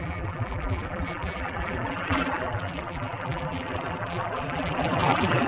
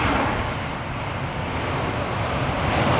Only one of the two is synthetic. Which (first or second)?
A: first